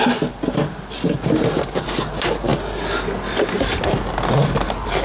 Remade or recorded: recorded